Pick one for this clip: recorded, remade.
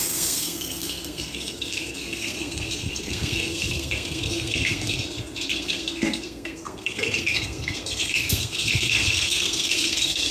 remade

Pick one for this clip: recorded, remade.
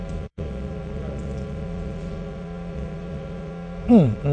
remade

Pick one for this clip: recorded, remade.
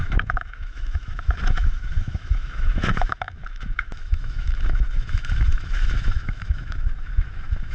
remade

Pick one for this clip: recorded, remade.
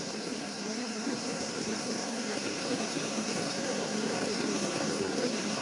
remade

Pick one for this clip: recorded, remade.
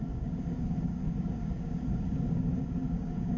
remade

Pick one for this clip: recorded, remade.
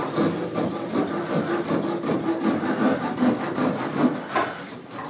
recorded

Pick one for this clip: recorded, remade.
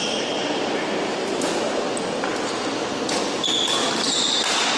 recorded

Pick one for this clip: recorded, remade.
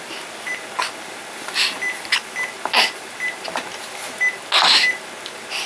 recorded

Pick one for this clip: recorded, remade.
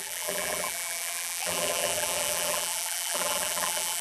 remade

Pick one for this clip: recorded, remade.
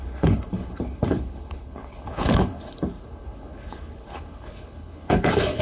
remade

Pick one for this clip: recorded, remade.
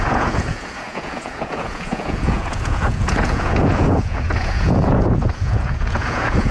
remade